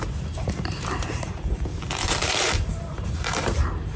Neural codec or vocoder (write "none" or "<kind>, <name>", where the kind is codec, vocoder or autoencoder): vocoder, BigVGAN v2